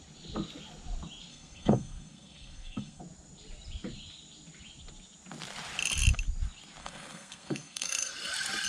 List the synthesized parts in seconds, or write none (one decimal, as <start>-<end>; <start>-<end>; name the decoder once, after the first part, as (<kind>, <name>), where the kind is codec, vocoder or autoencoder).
1.3-3.0 (codec, SNAC); 6.8-8.1